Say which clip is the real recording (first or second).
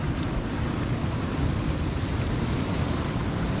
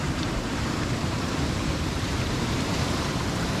first